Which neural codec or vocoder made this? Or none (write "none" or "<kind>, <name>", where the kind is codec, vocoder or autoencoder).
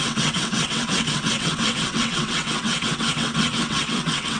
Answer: vocoder, WaveNeXt